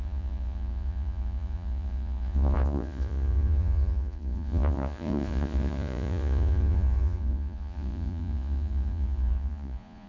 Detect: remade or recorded remade